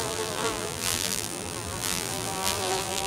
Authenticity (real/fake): fake